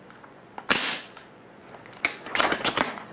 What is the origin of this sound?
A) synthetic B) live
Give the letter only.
A